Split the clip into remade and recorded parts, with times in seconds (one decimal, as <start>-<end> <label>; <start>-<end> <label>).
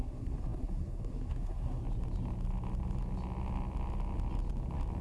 0.0-1.8 remade; 1.8-5.0 recorded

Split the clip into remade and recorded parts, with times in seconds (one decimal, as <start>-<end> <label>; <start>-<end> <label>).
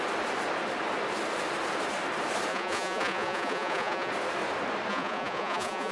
0.0-2.5 recorded; 2.5-4.1 remade; 4.1-4.9 recorded; 4.9-5.9 remade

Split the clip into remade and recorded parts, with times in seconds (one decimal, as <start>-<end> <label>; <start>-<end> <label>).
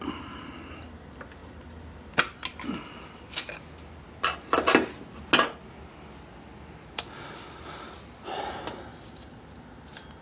0.0-10.2 recorded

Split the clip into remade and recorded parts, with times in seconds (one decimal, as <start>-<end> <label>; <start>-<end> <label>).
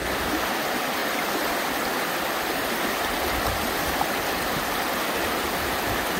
0.0-6.2 recorded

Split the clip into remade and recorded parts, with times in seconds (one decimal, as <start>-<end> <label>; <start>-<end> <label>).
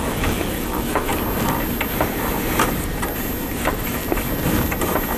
0.0-1.1 remade; 1.1-3.5 recorded; 3.5-4.0 remade; 4.0-5.2 recorded